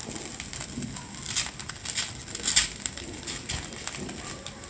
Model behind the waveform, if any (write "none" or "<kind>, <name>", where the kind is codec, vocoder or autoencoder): none